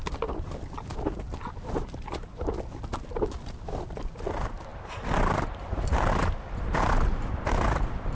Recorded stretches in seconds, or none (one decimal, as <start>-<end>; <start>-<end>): 0.0-8.1